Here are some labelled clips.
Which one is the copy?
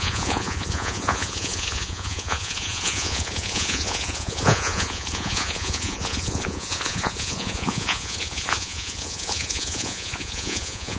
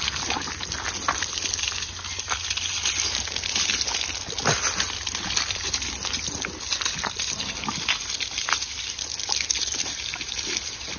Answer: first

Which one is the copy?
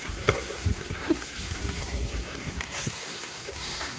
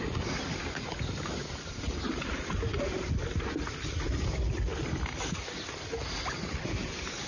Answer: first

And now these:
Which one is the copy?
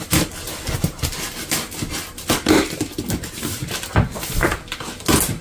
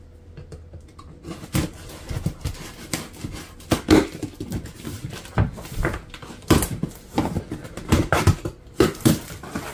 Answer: second